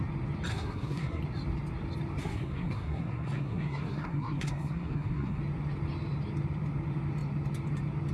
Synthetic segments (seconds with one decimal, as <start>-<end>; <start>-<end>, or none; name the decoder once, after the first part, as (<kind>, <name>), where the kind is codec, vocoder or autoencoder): 0.5-1.2 (codec, SNAC); 2.2-5.4